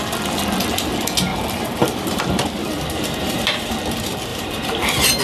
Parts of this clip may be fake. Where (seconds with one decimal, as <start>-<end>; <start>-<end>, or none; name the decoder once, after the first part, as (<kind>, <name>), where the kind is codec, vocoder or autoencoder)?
1.3-2.2 (vocoder, BigVGAN v2); 2.6-3.7; 4.3-5.2